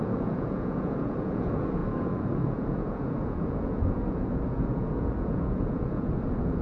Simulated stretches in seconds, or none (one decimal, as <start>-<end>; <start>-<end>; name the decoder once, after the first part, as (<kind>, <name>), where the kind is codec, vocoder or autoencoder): 0.0-6.6 (vocoder, Vocos)